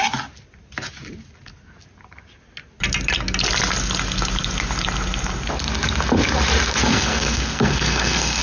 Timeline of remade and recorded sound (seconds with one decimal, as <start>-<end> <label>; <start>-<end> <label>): 0.0-6.8 recorded; 6.8-8.4 remade